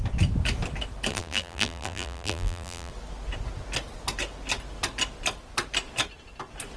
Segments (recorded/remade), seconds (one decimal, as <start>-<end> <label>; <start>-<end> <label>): 0.0-1.1 recorded; 1.1-2.9 remade; 2.9-6.8 recorded